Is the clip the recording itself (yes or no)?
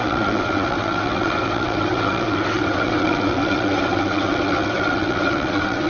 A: no